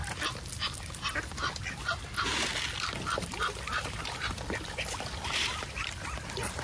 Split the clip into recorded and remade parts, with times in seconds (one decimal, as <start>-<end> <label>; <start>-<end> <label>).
0.0-4.0 recorded; 4.0-6.6 remade